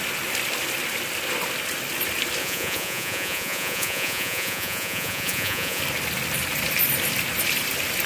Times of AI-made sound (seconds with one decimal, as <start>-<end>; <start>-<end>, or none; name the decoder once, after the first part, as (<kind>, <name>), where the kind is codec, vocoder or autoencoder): 2.4-5.8 (vocoder, Vocos)